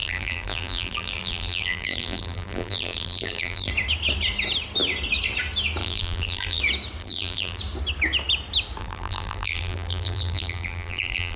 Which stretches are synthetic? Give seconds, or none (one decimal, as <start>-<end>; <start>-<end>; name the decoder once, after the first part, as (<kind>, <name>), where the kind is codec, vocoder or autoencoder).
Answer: 0.0-3.7 (vocoder, BigVGAN v2); 5.8-6.6; 7.0-7.6; 8.8-11.4